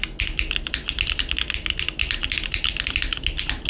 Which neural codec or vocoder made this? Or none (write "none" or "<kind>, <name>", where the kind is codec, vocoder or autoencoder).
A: none